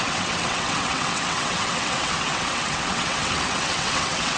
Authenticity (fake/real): fake